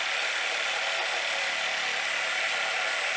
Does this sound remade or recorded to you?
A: recorded